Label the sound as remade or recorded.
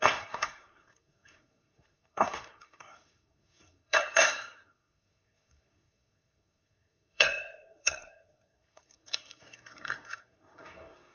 remade